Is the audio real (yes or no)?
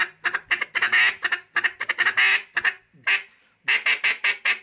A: yes